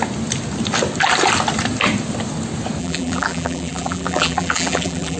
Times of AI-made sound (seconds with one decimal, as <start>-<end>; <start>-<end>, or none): 2.8-5.2